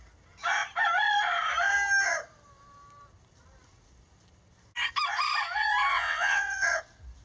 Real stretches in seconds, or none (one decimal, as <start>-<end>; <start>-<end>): 0.0-5.9; 6.8-7.2